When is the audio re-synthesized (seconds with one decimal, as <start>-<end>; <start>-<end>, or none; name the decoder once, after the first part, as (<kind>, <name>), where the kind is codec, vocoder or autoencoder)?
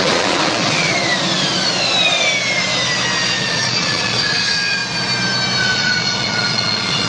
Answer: 0.0-0.9 (vocoder, Vocos); 3.4-4.8; 5.6-7.1